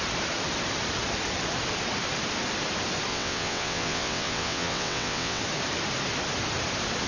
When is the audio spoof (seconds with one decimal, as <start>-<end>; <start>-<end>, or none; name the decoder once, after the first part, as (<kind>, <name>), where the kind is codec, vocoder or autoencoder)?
3.1-5.4 (vocoder, WaveNeXt)